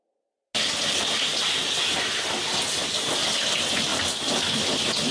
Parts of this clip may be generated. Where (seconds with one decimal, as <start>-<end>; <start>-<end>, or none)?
none